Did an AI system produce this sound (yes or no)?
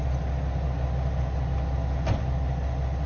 no